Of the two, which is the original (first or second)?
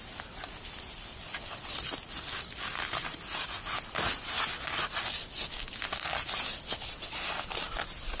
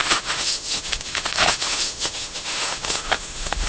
first